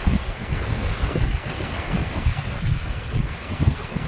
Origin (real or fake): fake